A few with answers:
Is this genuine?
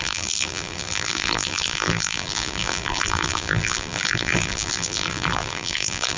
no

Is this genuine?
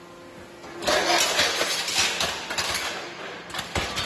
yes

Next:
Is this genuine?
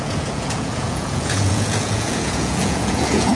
no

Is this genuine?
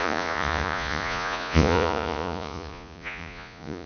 no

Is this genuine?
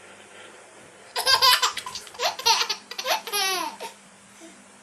no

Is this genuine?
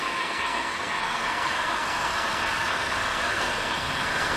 no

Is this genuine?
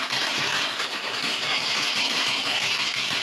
no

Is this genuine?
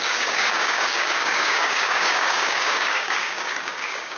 no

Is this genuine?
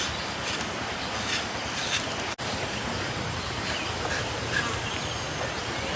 yes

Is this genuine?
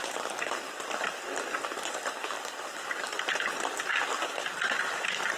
yes